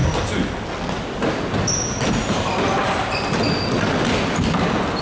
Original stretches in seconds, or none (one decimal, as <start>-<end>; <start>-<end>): 0.0-5.0